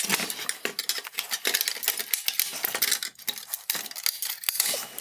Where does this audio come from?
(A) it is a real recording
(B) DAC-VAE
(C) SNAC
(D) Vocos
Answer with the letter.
A